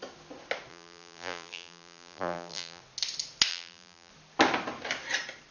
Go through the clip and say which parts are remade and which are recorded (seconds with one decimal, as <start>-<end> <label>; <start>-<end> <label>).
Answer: 0.0-0.7 recorded; 0.7-2.8 remade; 2.8-3.5 recorded; 3.5-4.1 remade; 4.1-5.5 recorded